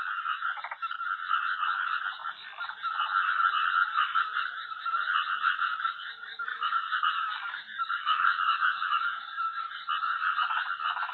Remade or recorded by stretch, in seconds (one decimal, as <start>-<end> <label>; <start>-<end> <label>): 0.0-6.5 recorded; 6.5-9.6 remade; 9.6-11.1 recorded